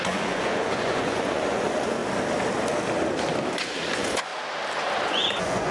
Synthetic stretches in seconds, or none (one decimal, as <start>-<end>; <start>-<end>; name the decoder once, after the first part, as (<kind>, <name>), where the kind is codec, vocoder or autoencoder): 0.0-2.0 (vocoder, Vocos); 3.5-4.3; 5.0-5.7